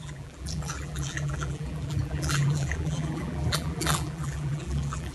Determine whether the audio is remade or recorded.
remade